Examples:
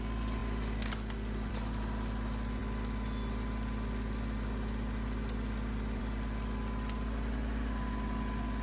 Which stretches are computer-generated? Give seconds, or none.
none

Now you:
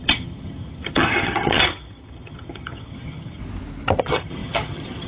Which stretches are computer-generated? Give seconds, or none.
0.0-3.4 (vocoder, HiFi-GAN); 4.0-5.1

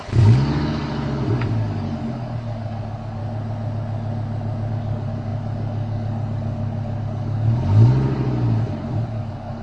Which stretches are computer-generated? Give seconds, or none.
0.0-3.2 (codec, DAC); 4.7-9.6

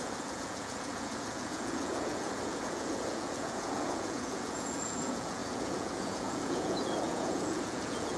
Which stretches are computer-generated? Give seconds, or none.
0.0-8.2 (vocoder, Vocos)

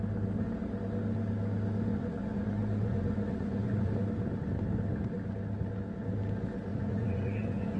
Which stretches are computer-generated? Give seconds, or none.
1.9-3.9 (vocoder, Vocos); 6.7-7.8